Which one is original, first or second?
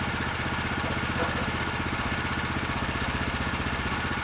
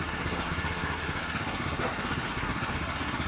first